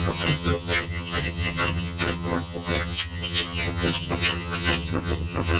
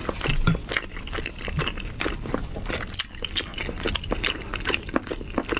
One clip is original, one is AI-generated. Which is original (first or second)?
second